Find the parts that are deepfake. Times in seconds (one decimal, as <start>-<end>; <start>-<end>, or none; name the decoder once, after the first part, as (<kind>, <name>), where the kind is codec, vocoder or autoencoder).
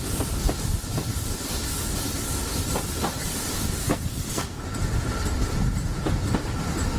3.8-4.6 (codec, SNAC)